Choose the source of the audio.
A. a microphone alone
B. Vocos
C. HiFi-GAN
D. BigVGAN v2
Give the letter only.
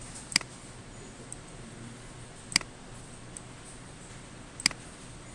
A